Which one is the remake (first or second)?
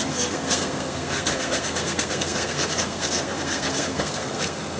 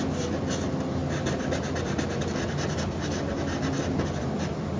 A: first